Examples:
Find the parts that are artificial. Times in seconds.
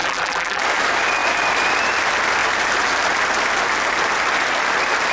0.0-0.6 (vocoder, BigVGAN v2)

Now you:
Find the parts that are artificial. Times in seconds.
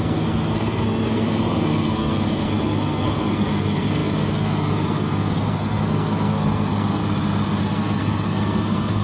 0.0-7.0 (codec, SNAC); 7.6-9.0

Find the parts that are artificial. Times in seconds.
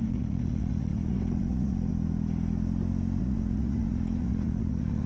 0.0-1.9 (vocoder, Vocos); 3.2-5.1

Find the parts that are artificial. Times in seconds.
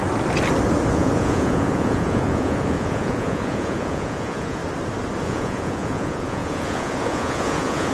0.9-4.6 (vocoder, Vocos); 5.2-7.9